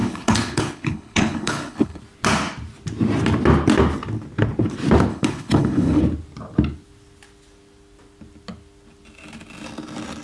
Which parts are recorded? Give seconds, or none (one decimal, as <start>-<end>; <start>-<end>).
2.0-5.1; 6.0-10.2